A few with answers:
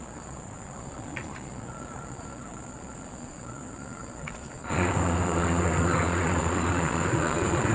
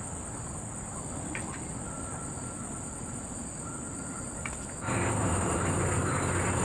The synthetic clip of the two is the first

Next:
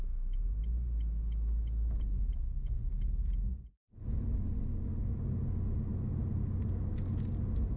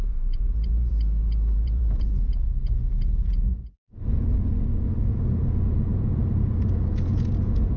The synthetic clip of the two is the second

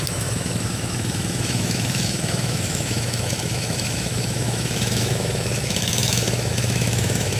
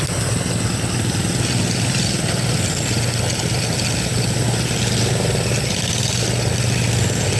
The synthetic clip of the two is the first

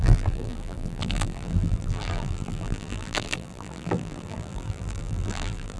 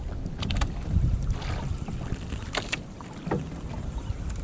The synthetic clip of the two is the first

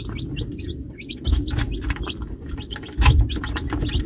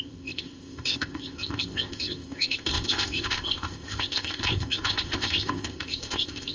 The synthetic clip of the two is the second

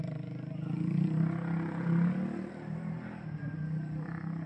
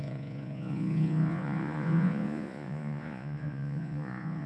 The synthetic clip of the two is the second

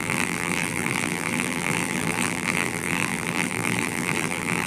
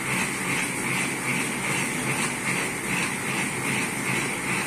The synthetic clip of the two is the first